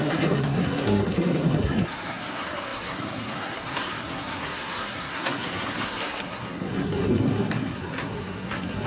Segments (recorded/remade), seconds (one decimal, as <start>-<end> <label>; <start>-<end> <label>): 0.0-8.9 remade